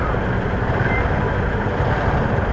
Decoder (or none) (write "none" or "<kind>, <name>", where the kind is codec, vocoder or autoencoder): none